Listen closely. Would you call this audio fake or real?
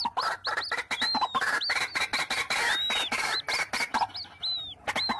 real